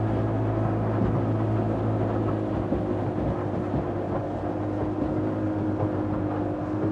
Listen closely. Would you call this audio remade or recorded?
recorded